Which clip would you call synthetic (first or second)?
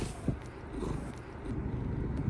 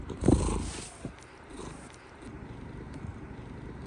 second